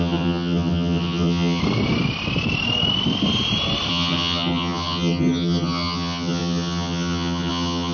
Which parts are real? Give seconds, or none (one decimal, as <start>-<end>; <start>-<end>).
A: 1.6-3.9